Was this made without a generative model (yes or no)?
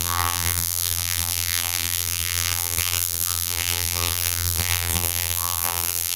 no